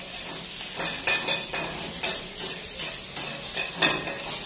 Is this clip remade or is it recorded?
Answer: recorded